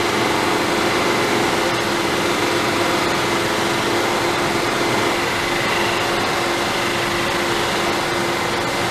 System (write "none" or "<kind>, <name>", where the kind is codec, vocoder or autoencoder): none